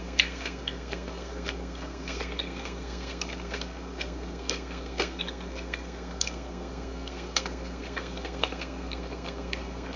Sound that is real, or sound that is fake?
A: fake